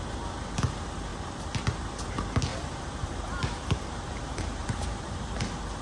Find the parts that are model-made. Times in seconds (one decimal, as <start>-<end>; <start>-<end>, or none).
2.5-5.8